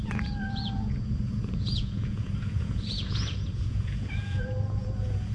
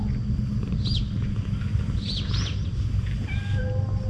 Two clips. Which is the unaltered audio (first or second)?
second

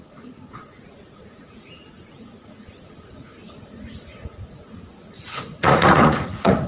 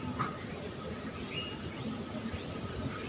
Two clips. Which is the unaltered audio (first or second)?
second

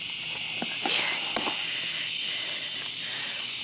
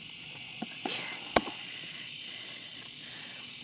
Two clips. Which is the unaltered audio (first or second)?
first